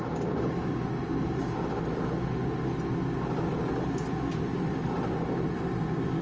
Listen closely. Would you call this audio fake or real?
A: real